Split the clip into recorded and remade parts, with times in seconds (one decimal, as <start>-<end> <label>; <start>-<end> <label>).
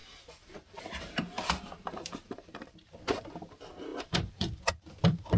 0.0-5.4 remade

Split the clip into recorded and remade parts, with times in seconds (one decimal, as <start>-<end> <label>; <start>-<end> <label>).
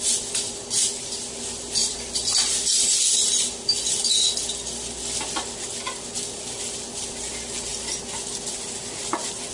0.0-0.8 recorded; 0.8-1.3 remade; 1.3-1.8 recorded; 1.8-3.5 remade; 3.5-7.7 recorded; 7.7-9.0 remade; 9.0-9.5 recorded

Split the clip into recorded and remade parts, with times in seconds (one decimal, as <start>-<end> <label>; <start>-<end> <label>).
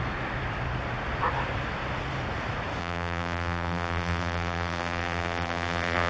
0.0-2.8 recorded; 2.8-6.1 remade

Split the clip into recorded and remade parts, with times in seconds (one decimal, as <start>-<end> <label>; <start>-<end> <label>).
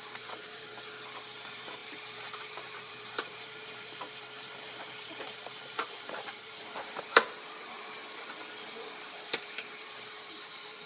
0.0-0.7 remade; 0.7-1.4 recorded; 1.4-8.0 remade; 8.0-9.1 recorded; 9.1-10.9 remade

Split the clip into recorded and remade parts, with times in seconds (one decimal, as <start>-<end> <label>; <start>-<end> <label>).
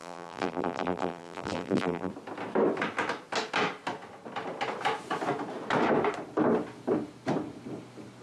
0.0-2.1 remade; 2.1-8.2 recorded